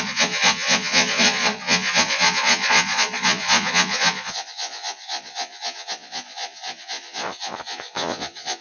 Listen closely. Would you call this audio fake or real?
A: fake